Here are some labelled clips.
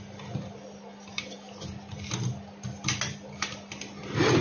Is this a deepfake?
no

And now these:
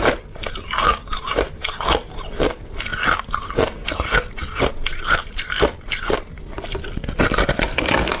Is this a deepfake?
no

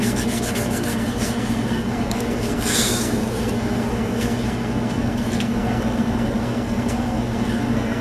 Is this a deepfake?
yes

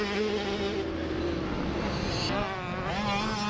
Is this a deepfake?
no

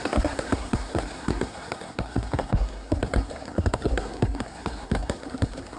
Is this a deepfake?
yes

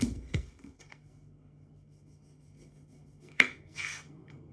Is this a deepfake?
yes